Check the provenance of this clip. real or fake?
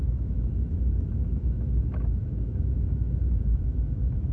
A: fake